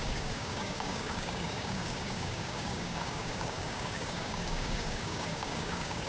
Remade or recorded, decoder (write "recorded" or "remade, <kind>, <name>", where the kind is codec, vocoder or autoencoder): remade, codec, DAC